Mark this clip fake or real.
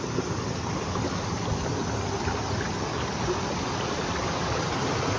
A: real